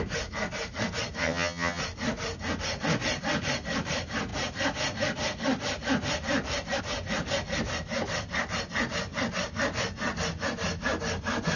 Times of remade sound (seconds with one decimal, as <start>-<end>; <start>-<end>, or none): 1.2-1.8